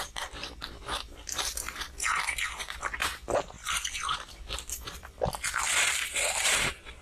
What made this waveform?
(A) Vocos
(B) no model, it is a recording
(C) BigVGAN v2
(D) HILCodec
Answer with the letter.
B